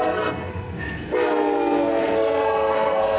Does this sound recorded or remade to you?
remade